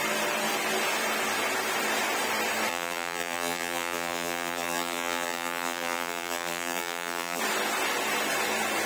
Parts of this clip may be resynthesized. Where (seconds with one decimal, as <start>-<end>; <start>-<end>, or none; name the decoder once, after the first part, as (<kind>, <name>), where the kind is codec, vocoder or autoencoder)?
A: 2.7-7.4 (vocoder, BigVGAN v2)